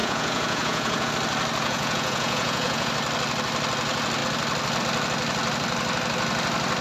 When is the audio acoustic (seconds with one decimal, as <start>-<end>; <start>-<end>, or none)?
1.1-1.6; 2.9-6.8